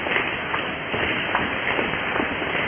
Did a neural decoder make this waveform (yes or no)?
no